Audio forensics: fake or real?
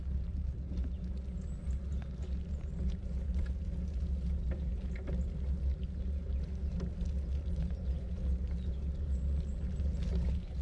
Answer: real